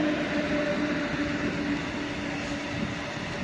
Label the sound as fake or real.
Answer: real